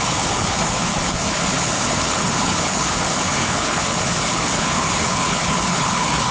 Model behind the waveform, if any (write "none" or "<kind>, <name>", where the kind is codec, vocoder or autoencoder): codec, HILCodec